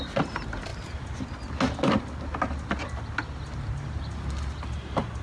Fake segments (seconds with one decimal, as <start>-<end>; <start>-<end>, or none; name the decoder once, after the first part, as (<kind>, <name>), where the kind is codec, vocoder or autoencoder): none